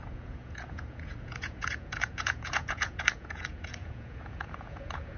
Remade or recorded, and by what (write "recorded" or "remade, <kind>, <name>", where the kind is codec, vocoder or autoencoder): remade, vocoder, Vocos